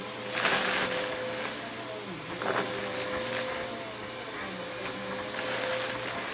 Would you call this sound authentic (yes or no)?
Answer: yes